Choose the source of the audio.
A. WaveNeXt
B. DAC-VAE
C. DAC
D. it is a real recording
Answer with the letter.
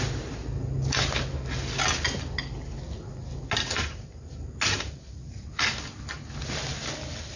D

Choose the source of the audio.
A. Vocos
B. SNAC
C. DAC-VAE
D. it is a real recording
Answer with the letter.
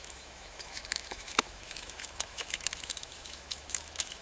C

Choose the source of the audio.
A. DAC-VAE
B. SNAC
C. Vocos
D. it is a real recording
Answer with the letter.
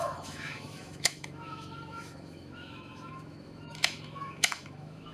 A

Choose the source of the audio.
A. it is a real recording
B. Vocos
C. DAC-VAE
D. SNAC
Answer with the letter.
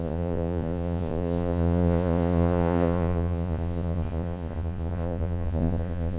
B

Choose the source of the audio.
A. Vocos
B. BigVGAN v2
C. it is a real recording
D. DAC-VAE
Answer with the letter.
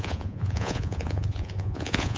A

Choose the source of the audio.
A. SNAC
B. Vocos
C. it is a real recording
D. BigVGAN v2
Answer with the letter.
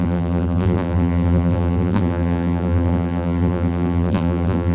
D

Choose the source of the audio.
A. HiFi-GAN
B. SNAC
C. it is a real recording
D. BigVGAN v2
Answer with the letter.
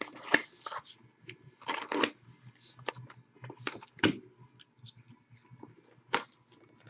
C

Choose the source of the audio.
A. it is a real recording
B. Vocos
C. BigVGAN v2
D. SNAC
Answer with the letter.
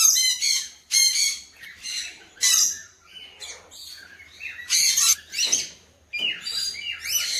C